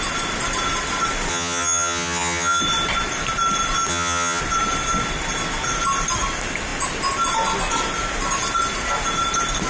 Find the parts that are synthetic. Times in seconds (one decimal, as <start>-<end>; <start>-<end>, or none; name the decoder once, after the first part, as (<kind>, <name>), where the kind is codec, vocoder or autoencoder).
1.3-2.6 (vocoder, HiFi-GAN); 3.9-4.4